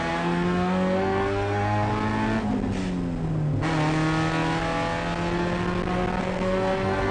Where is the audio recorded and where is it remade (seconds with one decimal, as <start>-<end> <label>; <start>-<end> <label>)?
0.0-1.9 remade; 1.9-6.2 recorded; 6.2-7.1 remade